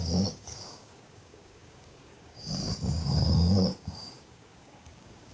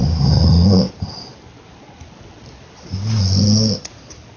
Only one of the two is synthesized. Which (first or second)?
first